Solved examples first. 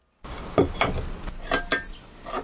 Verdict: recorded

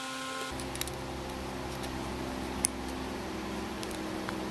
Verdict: recorded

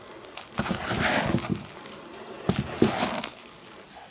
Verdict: recorded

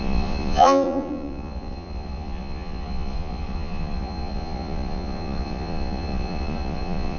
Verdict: remade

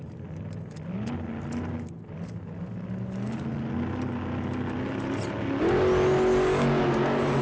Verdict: recorded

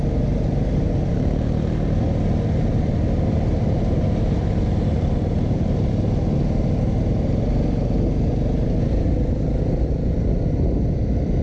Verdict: recorded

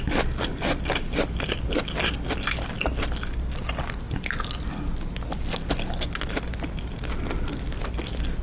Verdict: recorded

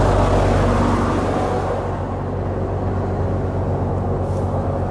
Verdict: recorded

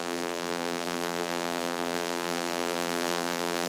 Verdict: remade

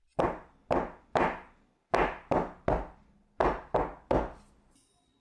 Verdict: recorded